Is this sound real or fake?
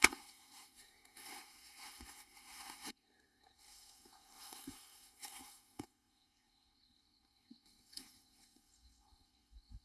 fake